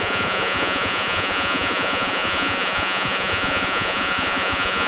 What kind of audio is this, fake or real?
fake